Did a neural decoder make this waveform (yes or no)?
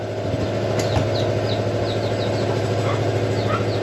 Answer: no